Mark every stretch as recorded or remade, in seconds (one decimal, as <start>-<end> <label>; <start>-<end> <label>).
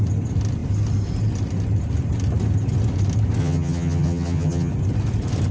0.0-3.4 recorded; 3.4-4.7 remade; 4.7-5.5 recorded